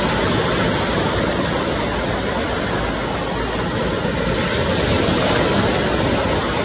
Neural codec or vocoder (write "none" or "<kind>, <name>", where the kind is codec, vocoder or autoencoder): none